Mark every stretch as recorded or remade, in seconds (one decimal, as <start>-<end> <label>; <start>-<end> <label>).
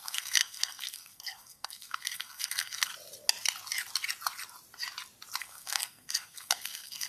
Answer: 0.0-2.9 remade; 2.9-5.4 recorded; 5.4-7.1 remade